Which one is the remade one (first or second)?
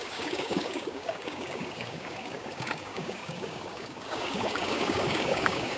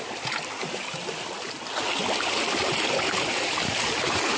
first